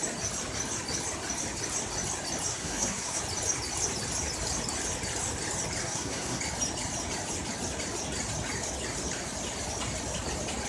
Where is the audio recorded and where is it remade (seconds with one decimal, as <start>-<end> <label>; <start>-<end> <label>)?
0.0-2.5 recorded; 2.5-3.2 remade; 3.2-5.8 recorded; 5.8-6.4 remade; 6.4-10.7 recorded